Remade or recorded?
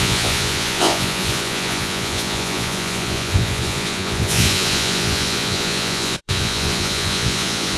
remade